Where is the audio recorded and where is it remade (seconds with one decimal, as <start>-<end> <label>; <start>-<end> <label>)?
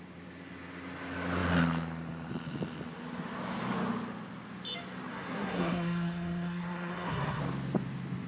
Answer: 0.0-5.1 recorded; 5.1-7.4 remade; 7.4-8.3 recorded